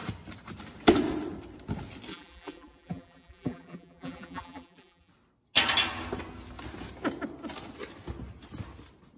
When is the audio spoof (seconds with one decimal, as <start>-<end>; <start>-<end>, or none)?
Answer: 2.1-5.1